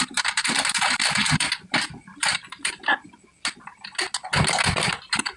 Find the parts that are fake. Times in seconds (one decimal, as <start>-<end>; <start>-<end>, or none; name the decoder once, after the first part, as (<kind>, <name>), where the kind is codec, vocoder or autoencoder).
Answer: 0.0-2.8 (vocoder, BigVGAN v2); 5.0-5.4